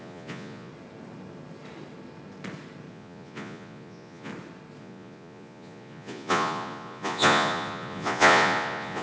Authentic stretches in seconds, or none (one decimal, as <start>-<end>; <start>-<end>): 0.7-2.9; 4.3-4.8